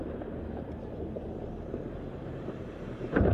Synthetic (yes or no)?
yes